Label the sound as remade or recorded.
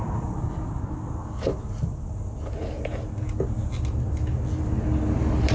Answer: recorded